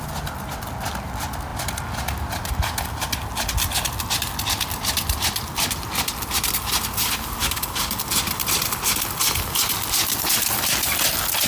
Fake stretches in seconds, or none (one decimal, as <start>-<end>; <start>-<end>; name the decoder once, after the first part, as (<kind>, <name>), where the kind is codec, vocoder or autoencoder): 7.4-8.0 (codec, DAC)